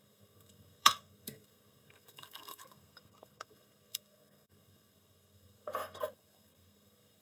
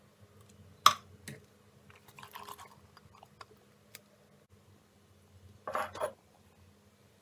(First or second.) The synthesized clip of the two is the first